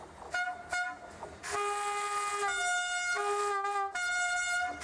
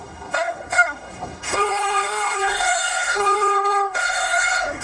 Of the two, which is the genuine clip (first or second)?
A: first